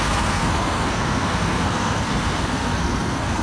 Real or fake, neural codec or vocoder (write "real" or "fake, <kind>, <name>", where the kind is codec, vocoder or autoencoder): fake, codec, SNAC